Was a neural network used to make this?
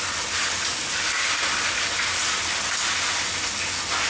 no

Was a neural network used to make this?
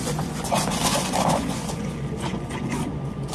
yes